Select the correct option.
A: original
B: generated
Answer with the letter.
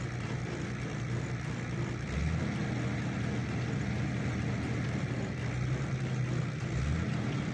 A